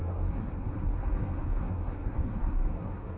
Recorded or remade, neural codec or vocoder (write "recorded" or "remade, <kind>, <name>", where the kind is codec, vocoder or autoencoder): remade, codec, SNAC